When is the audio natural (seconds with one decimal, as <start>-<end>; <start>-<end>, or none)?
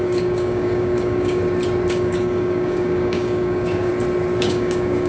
1.4-1.9; 3.9-4.4